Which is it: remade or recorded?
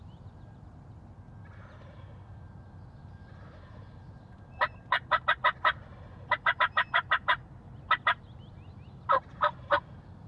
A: recorded